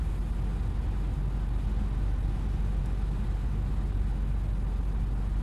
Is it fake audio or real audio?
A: real